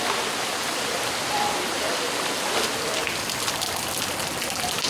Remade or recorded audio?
recorded